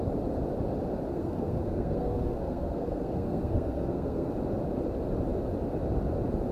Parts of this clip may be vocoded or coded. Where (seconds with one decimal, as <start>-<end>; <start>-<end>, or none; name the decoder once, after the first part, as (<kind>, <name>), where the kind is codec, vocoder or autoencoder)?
1.1-4.3 (codec, SNAC)